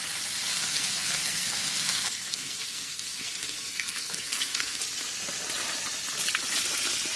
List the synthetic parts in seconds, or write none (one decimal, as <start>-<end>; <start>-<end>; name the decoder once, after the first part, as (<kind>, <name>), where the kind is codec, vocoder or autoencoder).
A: 0.5-4.8 (codec, SNAC)